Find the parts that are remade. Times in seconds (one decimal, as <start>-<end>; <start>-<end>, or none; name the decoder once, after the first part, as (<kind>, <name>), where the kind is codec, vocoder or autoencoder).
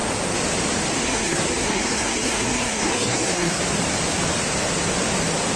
1.0-3.6 (codec, SNAC)